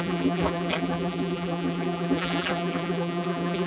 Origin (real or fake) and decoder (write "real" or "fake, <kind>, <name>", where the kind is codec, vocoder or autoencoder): fake, vocoder, BigVGAN v2